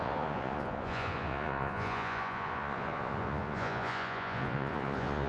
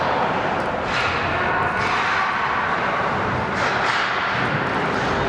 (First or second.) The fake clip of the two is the first